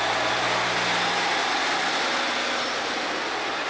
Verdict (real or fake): real